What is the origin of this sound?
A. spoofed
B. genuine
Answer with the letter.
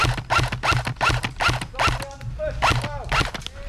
B